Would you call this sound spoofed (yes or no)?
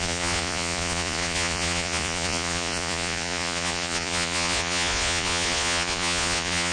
yes